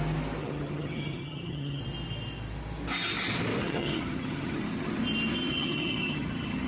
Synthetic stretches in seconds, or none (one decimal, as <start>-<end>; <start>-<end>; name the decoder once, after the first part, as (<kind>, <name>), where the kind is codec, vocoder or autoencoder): 0.4-1.8 (vocoder, HiFi-GAN); 3.6-4.9; 5.5-6.7